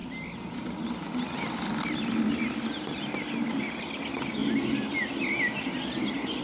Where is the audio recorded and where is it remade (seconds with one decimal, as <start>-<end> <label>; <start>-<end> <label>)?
0.0-6.4 recorded